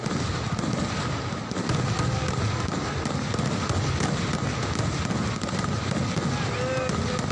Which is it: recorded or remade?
recorded